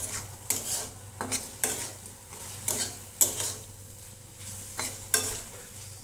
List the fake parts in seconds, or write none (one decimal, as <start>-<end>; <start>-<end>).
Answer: none